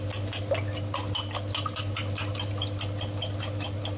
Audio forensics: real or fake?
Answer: real